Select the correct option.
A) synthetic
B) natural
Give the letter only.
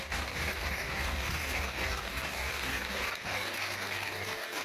A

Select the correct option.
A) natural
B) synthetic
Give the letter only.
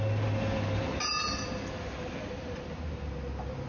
A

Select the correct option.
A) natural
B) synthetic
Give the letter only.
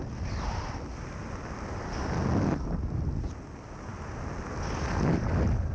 A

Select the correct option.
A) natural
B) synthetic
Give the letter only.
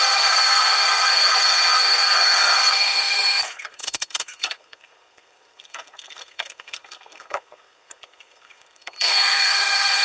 B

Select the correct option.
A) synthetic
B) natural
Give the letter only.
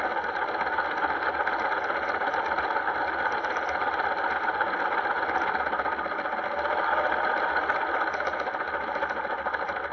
B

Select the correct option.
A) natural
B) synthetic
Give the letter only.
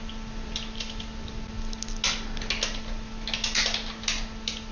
A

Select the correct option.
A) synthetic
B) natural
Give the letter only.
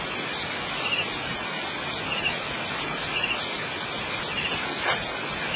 B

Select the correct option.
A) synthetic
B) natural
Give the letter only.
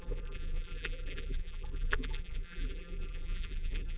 A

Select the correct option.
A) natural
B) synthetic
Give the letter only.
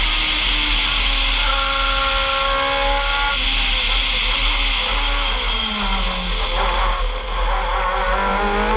A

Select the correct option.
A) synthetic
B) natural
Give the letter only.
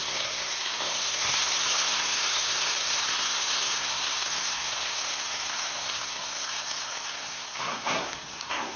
A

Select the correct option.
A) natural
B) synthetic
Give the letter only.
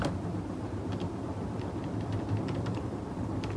B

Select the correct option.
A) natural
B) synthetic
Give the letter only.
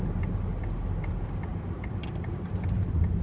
A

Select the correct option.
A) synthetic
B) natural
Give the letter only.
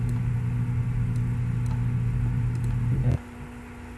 B